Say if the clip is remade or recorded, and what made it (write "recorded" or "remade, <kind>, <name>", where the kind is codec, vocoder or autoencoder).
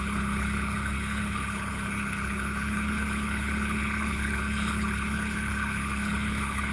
remade, codec, HILCodec